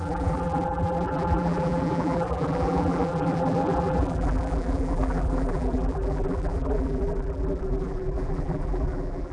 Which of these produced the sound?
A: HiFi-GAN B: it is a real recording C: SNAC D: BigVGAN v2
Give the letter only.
D